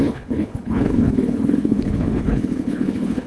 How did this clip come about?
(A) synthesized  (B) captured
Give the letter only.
A